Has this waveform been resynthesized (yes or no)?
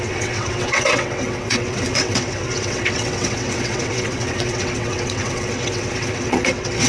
yes